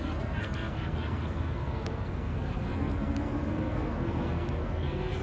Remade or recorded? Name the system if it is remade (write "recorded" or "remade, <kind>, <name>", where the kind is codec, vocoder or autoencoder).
remade, codec, SNAC